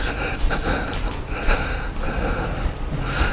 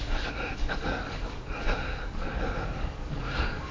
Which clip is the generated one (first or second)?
second